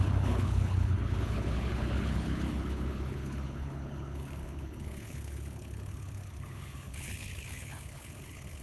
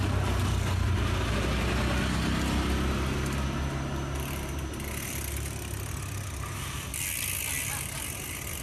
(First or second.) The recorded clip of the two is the second